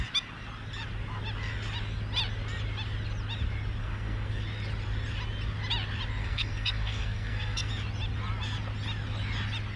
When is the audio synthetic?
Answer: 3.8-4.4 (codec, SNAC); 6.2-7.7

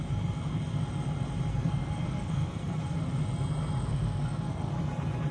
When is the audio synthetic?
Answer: 1.5-3.0 (codec, SNAC); 3.9-4.7